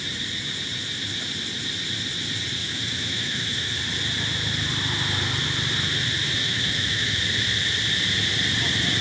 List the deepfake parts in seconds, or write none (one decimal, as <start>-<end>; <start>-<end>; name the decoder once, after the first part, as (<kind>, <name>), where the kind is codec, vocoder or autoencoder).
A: 2.6-3.8 (autoencoder, DAC-VAE); 6.4-7.2